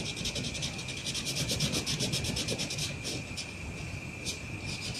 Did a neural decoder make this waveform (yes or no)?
no